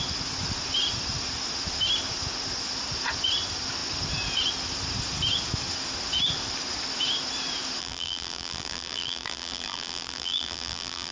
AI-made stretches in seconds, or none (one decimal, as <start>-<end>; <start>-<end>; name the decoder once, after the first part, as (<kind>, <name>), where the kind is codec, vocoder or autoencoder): 7.8-11.1 (vocoder, BigVGAN v2)